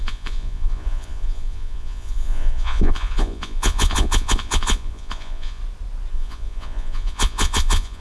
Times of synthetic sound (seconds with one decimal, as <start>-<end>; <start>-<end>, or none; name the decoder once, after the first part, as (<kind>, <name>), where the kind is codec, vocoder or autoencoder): 0.0-5.6 (vocoder, Vocos); 6.1-8.0